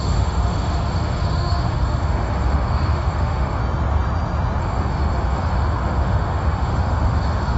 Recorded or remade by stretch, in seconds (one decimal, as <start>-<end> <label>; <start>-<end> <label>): 0.0-3.6 remade; 3.6-4.6 recorded; 4.6-7.6 remade